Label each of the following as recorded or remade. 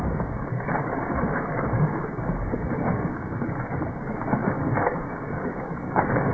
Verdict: remade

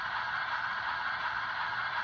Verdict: recorded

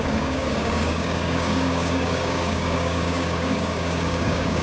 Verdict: remade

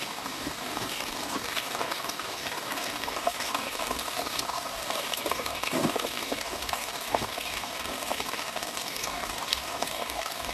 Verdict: remade